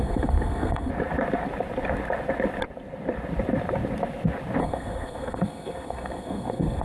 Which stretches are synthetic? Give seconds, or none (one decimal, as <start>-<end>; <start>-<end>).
0.0-0.9; 4.6-6.8